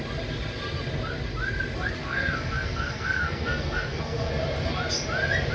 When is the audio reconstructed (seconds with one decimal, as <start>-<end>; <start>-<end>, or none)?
2.0-4.3